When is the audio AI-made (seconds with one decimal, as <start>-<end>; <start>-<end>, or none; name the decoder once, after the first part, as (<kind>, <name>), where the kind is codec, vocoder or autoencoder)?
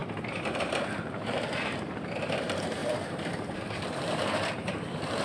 0.6-5.2 (vocoder, BigVGAN v2)